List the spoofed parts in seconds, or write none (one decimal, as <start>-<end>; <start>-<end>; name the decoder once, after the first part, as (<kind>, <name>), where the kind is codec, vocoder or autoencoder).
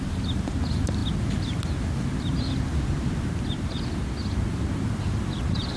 0.0-1.0 (vocoder, BigVGAN v2); 4.5-5.8